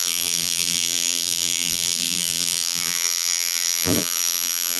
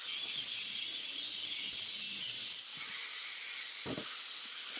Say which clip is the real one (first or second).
second